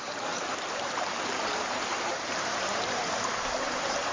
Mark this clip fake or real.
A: fake